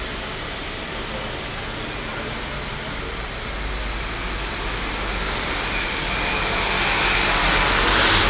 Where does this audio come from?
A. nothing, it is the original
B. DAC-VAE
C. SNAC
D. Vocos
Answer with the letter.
A